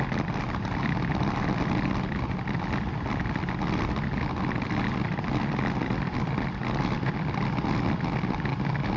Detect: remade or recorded recorded